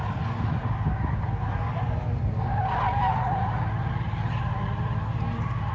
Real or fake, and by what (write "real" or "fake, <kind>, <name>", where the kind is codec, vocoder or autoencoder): real